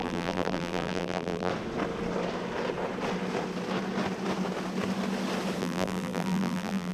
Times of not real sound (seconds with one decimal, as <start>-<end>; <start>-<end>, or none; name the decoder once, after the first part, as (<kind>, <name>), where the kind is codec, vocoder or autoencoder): 0.0-1.5 (vocoder, BigVGAN v2); 5.6-6.9